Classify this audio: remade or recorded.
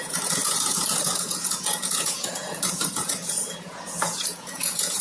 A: remade